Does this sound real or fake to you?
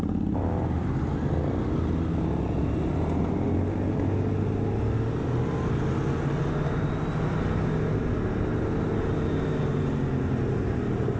real